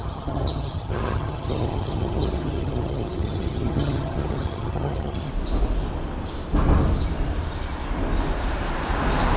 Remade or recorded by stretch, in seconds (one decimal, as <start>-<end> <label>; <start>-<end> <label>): 0.0-5.3 remade; 5.3-9.4 recorded